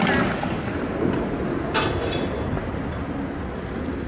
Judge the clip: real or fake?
real